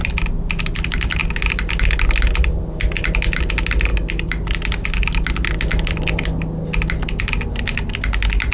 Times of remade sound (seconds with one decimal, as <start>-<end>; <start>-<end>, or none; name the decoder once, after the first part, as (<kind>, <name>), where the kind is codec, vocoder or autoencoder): none